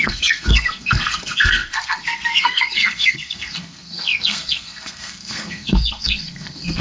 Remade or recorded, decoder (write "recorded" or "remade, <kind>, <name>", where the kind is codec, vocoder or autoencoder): remade, codec, SNAC